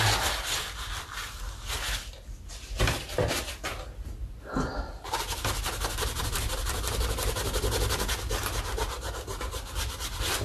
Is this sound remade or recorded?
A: recorded